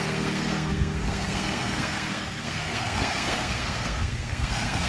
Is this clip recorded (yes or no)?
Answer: no